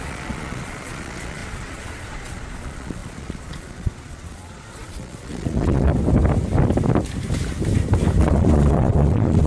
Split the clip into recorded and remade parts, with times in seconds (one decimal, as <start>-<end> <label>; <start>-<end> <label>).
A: 0.0-5.9 remade; 5.9-8.2 recorded; 8.2-9.5 remade